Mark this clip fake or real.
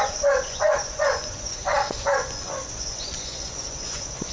fake